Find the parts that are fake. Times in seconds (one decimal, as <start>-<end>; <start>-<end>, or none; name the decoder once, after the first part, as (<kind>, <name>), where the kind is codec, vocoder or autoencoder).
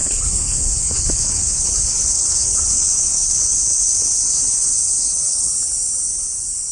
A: 0.0-4.0 (codec, HILCodec); 4.5-5.5